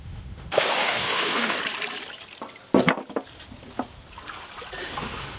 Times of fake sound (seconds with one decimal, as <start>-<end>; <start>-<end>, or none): 0.0-1.6; 4.8-5.4